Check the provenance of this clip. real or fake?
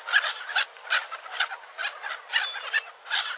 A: real